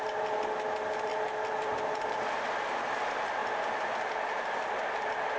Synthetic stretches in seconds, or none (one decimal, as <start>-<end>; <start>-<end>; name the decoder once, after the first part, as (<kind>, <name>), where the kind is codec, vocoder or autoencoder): none